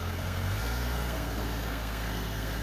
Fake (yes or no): yes